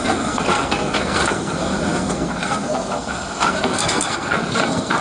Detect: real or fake fake